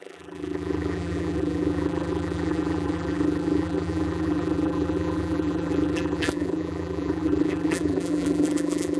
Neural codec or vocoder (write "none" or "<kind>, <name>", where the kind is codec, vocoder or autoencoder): vocoder, BigVGAN v2